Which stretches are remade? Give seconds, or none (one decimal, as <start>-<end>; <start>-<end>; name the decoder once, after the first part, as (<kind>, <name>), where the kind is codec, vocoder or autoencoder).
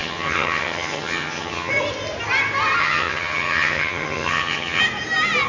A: 0.0-1.7 (vocoder, HiFi-GAN); 2.8-4.8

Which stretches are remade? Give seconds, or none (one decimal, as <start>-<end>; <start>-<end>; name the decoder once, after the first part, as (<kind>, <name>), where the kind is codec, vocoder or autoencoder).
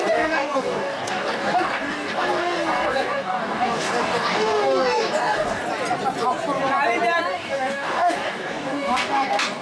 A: 0.0-5.6 (codec, DAC); 7.3-9.6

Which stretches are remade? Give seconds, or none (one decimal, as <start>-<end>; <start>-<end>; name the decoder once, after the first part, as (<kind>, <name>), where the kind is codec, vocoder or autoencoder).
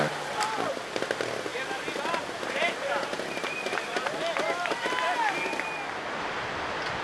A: none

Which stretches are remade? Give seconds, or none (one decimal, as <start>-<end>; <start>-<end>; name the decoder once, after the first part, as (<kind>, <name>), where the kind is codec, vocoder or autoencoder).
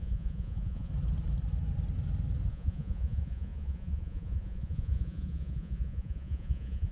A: 0.0-0.9 (vocoder, Vocos); 2.5-6.9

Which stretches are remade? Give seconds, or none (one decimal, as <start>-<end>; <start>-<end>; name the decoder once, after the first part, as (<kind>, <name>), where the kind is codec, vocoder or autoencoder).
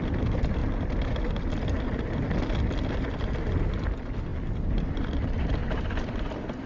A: 0.0-0.6 (vocoder, BigVGAN v2); 3.9-6.7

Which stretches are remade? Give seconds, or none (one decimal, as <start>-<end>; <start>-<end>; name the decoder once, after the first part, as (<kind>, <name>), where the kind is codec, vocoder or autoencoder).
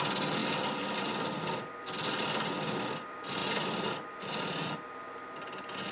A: none